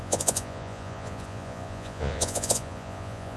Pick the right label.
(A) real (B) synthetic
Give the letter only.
B